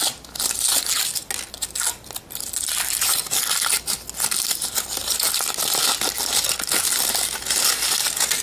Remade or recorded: recorded